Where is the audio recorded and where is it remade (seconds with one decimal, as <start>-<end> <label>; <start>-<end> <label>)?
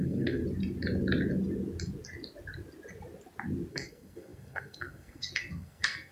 0.0-0.4 remade; 0.4-3.7 recorded; 3.7-6.1 remade